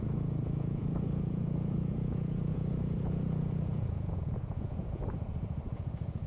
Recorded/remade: remade